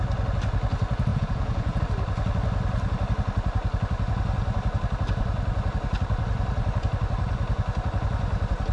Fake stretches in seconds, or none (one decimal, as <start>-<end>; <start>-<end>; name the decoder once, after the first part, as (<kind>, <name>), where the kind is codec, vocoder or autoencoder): 1.1-1.8 (vocoder, Vocos)